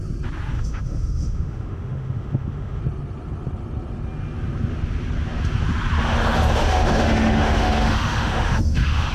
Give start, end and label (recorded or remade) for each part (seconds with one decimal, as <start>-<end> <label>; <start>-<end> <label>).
0.0-0.5 recorded; 0.5-2.8 remade; 2.8-6.6 recorded; 6.6-9.1 remade